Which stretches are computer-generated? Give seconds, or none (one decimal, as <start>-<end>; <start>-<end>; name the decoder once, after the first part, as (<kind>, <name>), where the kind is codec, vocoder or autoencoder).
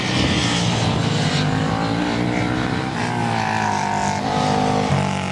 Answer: 0.4-3.2 (vocoder, BigVGAN v2)